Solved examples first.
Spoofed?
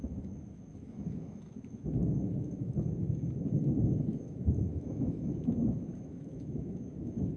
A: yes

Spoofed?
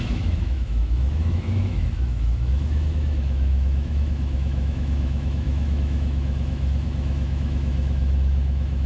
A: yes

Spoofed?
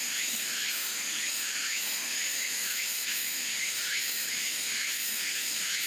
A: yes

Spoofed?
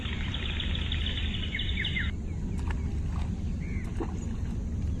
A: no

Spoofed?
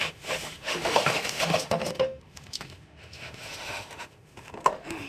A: yes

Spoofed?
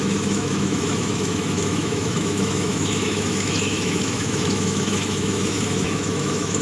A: yes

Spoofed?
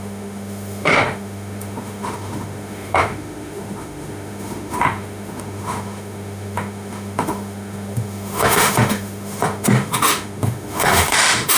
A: yes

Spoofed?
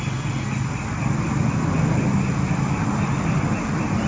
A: no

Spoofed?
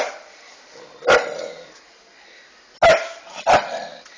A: no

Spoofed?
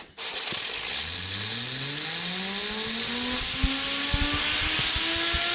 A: no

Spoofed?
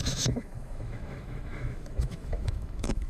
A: yes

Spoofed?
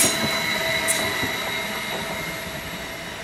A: no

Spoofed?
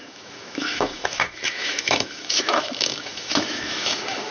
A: yes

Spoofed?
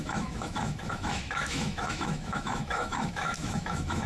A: yes